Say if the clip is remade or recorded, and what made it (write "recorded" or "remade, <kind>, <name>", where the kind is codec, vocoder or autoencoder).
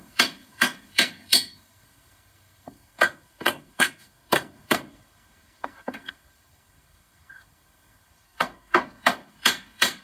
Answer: remade, codec, SNAC